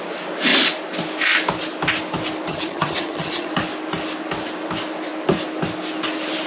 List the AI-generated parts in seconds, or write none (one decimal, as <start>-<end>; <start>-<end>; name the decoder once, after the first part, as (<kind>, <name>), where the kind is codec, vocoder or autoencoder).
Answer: 2.5-3.5 (vocoder, HiFi-GAN)